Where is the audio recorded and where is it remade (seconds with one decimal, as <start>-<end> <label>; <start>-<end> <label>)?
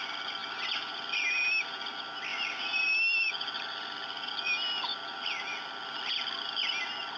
0.0-0.4 recorded; 0.4-1.2 remade; 1.2-2.3 recorded; 2.3-3.0 remade; 3.0-7.2 recorded